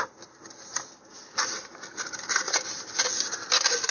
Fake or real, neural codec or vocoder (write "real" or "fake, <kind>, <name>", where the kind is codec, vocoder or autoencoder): real